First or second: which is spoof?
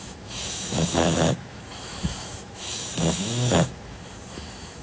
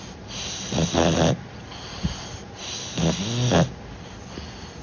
first